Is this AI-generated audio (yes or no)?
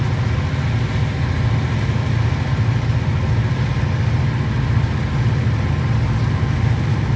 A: no